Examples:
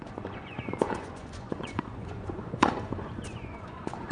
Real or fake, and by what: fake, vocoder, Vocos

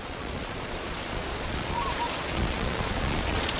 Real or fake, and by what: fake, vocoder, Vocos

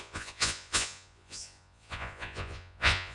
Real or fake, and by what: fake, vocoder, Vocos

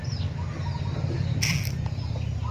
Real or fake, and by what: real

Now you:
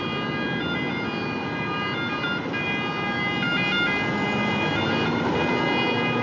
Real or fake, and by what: real